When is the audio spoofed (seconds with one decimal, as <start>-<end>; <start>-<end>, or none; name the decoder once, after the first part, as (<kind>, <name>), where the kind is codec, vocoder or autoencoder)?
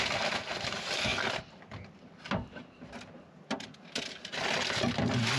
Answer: none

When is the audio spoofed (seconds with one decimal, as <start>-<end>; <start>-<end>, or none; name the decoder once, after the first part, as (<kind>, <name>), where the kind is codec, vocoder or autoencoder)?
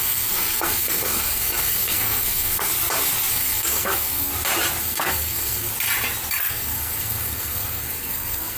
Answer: 0.0-2.7 (codec, SNAC); 3.3-4.3; 4.8-5.7; 6.5-8.6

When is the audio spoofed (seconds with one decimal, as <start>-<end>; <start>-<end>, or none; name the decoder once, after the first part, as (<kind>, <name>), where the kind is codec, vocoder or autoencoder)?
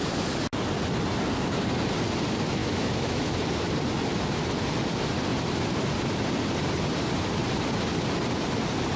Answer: 2.6-3.3 (autoencoder, DAC-VAE)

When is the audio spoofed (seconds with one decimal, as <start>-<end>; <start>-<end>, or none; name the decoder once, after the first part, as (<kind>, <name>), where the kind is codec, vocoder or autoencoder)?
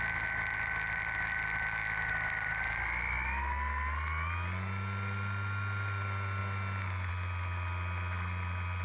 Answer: none